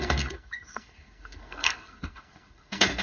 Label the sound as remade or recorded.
remade